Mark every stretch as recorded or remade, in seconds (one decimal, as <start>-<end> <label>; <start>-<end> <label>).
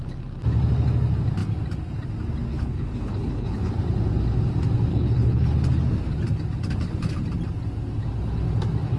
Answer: 0.0-2.5 recorded; 2.5-3.7 remade; 3.7-4.9 recorded; 4.9-5.5 remade; 5.5-9.0 recorded